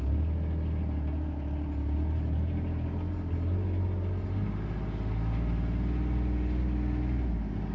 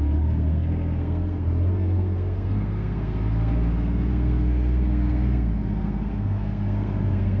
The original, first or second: first